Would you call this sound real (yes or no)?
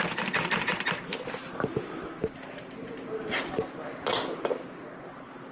yes